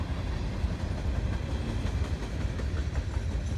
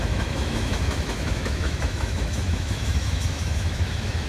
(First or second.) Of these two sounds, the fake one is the second